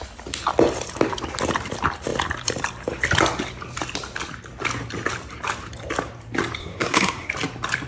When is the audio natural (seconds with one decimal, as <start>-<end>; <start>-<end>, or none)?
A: 0.0-6.6; 7.3-7.9